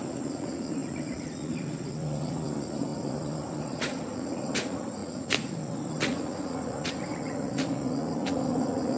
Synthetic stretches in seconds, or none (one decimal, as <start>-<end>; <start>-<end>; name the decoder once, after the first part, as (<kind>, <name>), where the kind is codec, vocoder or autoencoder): 0.0-9.0 (vocoder, Vocos)